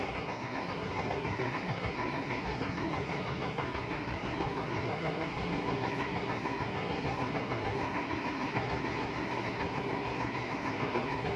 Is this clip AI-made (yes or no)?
yes